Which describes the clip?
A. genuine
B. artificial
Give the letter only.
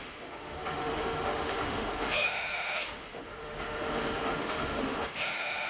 B